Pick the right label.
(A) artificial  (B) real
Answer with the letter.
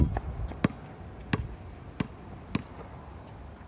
B